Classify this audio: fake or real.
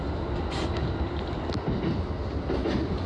real